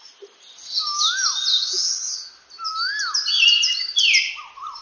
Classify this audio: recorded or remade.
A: recorded